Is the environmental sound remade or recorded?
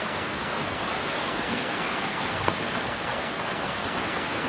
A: remade